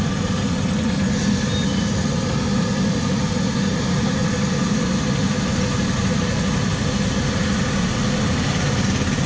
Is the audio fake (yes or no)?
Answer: no